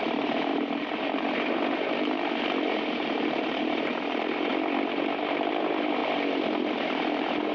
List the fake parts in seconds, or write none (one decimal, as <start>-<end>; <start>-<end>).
0.0-4.5; 5.5-6.0; 6.7-7.5